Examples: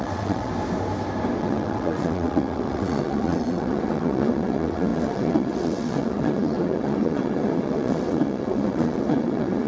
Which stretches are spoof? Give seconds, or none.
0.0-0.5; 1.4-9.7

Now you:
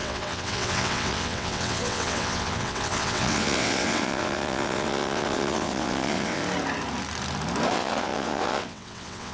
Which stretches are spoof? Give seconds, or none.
0.0-6.4; 7.7-9.3

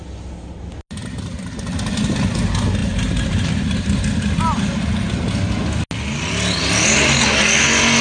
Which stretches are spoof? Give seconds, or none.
none

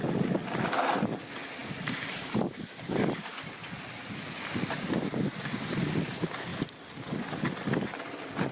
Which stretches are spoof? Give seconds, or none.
none

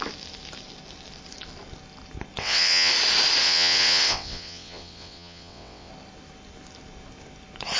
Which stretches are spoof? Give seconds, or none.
2.4-2.9; 3.4-5.9